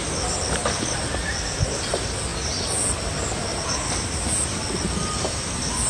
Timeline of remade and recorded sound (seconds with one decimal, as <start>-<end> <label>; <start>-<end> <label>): 0.0-5.9 recorded